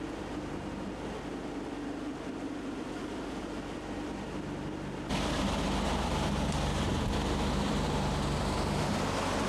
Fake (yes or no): yes